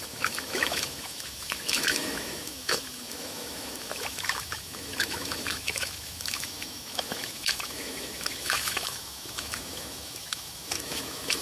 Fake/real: fake